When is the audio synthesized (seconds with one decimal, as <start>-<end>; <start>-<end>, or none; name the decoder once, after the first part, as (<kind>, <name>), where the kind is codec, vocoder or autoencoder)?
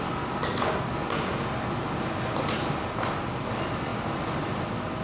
0.0-0.4 (vocoder, BigVGAN v2); 3.4-5.0